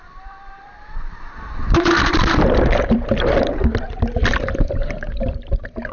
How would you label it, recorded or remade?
remade